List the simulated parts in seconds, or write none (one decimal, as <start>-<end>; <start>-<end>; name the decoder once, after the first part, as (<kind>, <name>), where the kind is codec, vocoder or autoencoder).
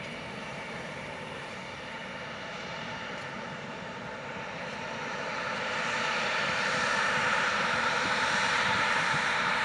0.0-2.0 (vocoder, BigVGAN v2); 2.5-9.6